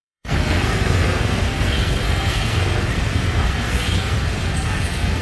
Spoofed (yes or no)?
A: yes